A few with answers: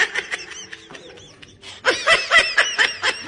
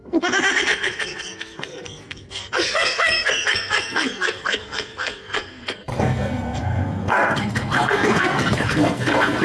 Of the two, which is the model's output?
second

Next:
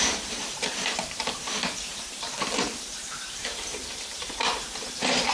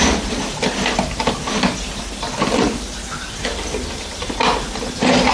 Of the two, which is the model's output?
first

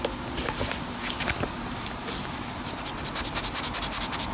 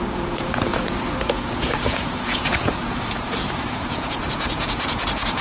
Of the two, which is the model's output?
second